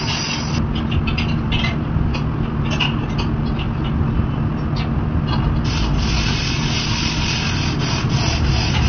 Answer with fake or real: real